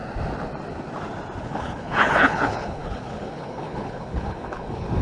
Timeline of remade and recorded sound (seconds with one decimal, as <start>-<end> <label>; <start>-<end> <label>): 0.0-1.4 recorded; 1.4-5.0 remade